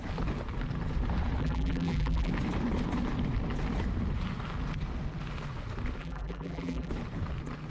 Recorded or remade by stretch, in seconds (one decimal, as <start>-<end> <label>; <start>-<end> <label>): 0.0-1.4 recorded; 1.4-2.3 remade; 2.3-6.0 recorded; 6.0-6.9 remade; 6.9-7.7 recorded